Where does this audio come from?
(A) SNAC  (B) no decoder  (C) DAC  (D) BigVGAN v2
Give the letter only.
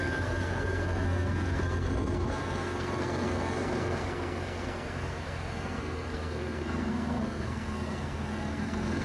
A